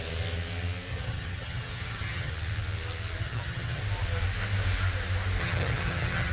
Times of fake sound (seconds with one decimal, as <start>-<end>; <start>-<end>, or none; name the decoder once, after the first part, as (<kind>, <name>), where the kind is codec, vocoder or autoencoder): 0.9-2.3 (vocoder, HiFi-GAN); 3.2-3.8; 5.4-6.3